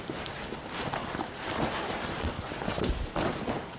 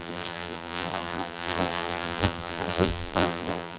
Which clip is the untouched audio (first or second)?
first